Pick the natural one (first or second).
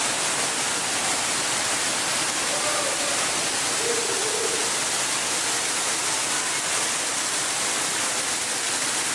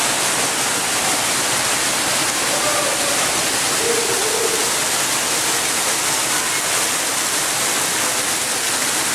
second